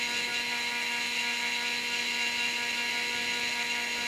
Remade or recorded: recorded